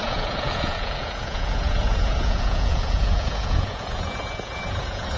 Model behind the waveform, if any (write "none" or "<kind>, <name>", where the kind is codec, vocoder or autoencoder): vocoder, Vocos